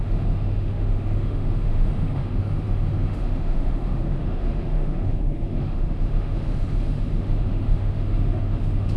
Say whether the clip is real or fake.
fake